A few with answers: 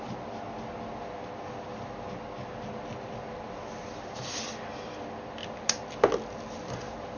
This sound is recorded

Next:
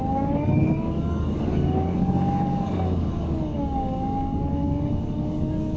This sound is remade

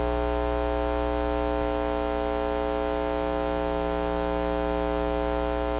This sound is recorded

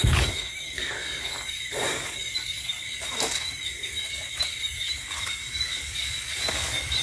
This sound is remade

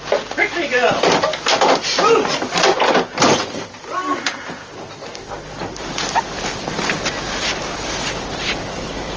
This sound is recorded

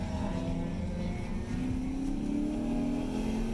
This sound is recorded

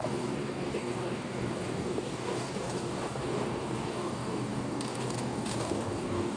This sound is remade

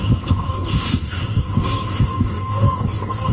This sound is remade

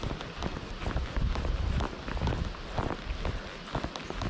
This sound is recorded